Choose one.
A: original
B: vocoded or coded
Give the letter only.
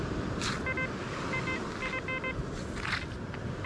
A